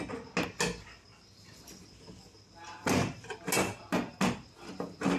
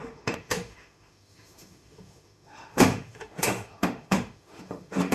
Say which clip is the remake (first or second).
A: second